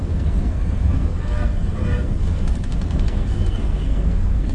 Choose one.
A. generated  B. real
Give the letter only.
A